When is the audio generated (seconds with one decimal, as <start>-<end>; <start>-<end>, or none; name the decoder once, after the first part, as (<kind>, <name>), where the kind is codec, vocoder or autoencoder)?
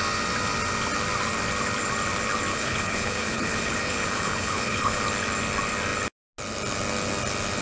2.5-5.0 (codec, HILCodec)